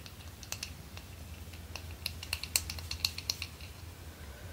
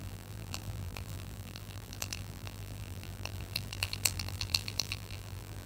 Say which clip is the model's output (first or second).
second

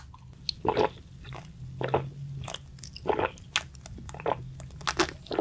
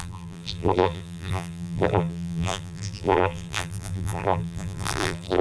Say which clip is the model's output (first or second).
second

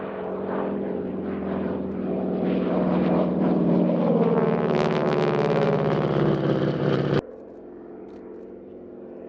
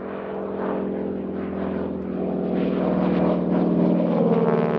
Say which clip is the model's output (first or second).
first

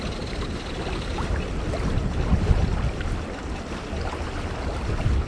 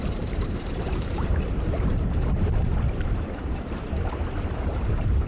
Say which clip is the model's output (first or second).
second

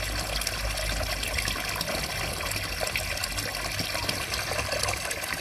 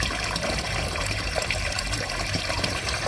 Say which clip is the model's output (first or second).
second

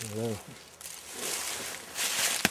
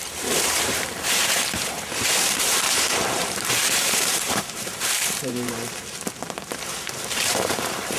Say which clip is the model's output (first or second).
second